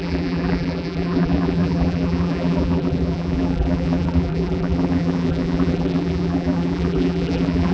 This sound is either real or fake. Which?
fake